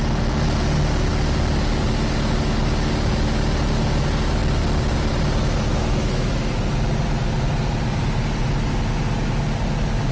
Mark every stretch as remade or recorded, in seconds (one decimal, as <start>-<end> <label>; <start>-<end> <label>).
0.0-5.7 recorded; 5.7-6.5 remade; 6.5-10.1 recorded